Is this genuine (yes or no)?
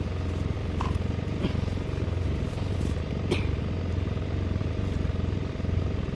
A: yes